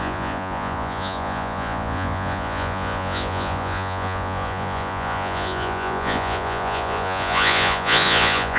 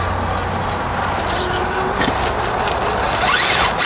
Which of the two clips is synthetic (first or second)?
first